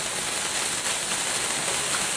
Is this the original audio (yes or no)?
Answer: yes